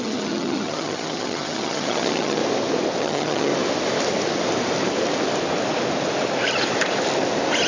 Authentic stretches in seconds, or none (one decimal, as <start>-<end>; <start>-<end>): 2.4-3.0; 3.5-7.7

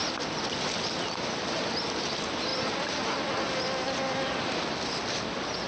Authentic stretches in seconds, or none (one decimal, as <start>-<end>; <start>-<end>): 0.0-5.7